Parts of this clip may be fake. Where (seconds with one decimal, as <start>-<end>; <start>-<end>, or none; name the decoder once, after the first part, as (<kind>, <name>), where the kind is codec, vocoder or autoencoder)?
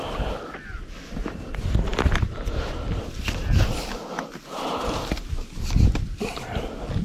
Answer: none